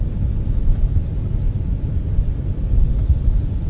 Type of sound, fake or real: real